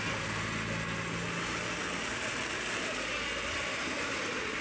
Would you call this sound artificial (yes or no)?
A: no